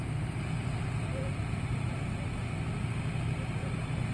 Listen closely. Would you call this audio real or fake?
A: fake